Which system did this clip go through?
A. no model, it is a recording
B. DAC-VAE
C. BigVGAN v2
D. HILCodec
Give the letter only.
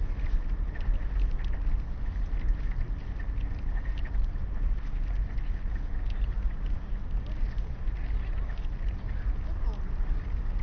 A